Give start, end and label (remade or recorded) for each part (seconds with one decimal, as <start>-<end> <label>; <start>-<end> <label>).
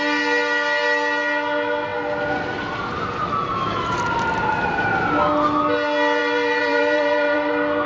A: 0.0-6.2 recorded; 6.2-7.5 remade; 7.5-7.9 recorded